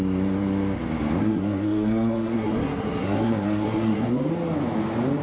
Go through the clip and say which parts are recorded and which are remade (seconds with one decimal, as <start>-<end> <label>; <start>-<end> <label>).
0.0-1.2 recorded; 1.2-4.3 remade; 4.3-5.2 recorded